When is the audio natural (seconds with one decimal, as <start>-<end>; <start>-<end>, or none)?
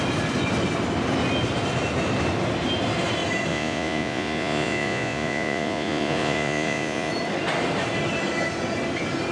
0.0-3.5; 7.1-9.3